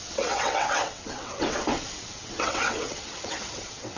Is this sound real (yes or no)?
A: no